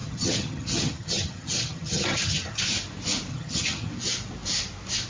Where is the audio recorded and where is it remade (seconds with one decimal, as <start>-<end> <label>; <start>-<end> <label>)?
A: 0.0-2.6 remade; 2.6-3.3 recorded; 3.3-3.9 remade; 3.9-5.1 recorded